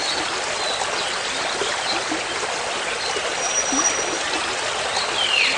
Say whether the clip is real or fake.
real